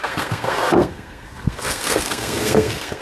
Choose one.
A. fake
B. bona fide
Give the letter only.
A